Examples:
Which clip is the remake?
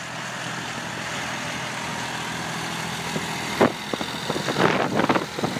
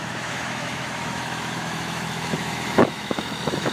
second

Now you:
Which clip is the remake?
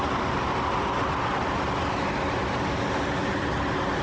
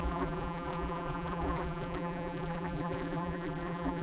second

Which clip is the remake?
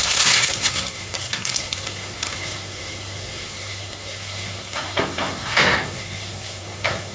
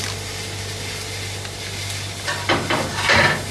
first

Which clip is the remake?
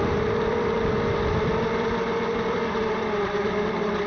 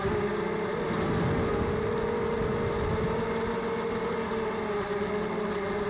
first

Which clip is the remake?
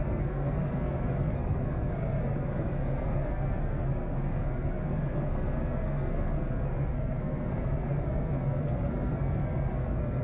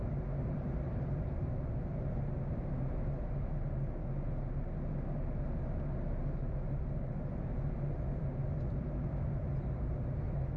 first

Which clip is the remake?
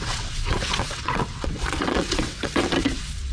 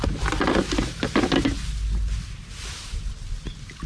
first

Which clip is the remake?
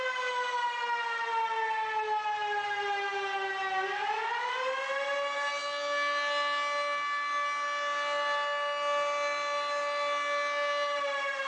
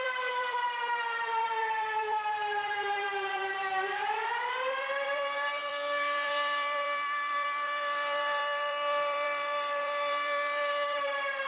second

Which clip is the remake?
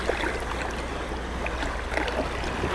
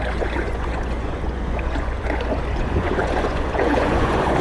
second